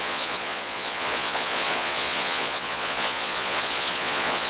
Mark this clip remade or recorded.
remade